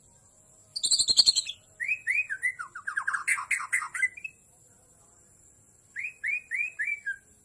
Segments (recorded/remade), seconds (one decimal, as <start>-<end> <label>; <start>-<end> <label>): 0.0-7.4 recorded